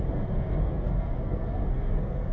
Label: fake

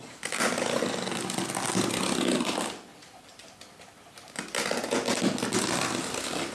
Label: real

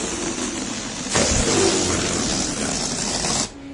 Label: real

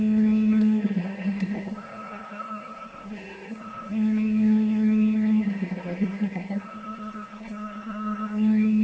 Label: fake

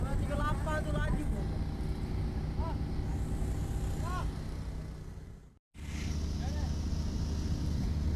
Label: real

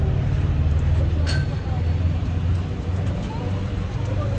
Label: real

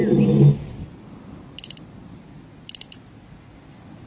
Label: real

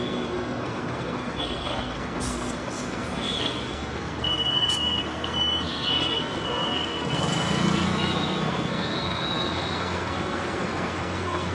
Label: fake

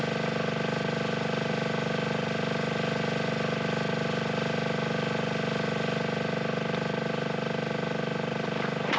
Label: real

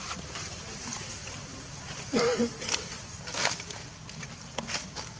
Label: real